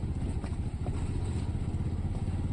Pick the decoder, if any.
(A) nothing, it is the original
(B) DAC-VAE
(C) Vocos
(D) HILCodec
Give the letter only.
A